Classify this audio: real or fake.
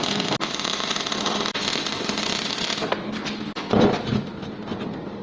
real